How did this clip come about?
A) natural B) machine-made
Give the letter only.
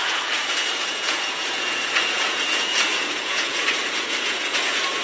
B